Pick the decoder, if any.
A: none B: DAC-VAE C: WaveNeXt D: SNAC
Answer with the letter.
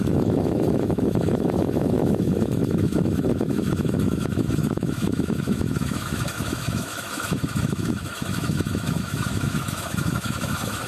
B